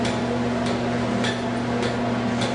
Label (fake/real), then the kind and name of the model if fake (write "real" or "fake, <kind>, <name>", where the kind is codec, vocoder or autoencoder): real